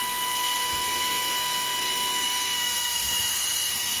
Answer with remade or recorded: remade